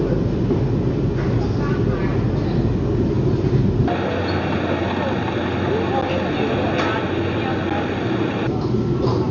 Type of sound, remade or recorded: recorded